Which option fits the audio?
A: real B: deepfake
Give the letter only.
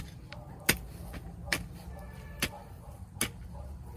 A